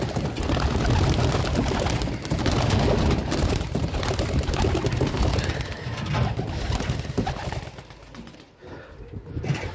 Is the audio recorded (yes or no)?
yes